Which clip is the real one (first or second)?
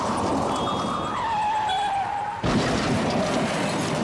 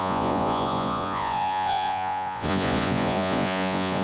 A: first